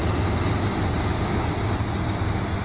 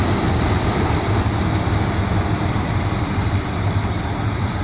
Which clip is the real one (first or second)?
first